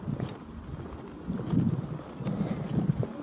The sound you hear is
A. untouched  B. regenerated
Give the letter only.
A